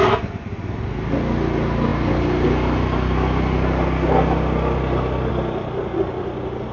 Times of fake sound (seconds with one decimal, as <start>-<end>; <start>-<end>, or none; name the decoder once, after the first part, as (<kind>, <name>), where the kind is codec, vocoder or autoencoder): none